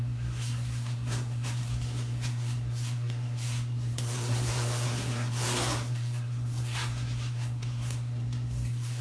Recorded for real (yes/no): no